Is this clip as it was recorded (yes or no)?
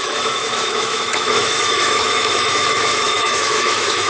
no